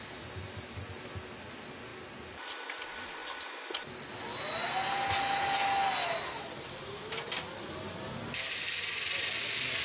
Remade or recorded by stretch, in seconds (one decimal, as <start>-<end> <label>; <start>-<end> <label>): 0.0-9.8 recorded